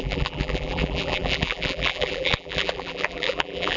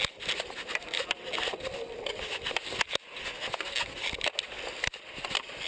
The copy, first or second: first